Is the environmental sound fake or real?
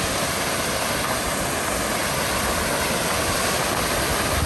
real